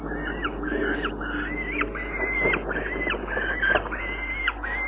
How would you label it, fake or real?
real